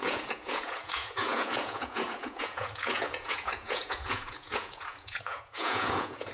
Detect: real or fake fake